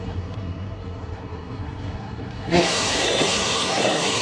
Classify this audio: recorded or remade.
remade